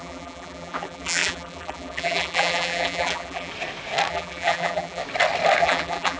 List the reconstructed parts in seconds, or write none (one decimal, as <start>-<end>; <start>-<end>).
0.0-3.5; 4.1-5.0; 5.6-6.2